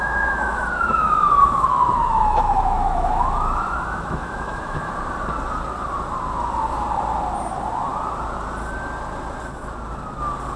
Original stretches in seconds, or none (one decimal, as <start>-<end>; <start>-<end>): 4.9-10.6